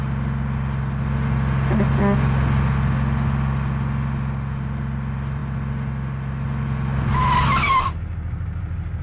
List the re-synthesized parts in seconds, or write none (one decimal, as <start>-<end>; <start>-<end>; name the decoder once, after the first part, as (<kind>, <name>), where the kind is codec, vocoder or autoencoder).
none